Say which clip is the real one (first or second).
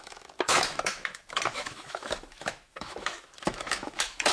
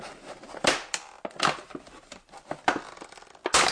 second